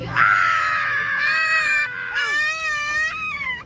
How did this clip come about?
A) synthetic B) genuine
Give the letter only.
A